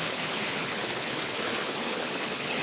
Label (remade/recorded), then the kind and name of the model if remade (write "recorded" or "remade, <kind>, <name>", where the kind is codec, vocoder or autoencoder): remade, codec, HILCodec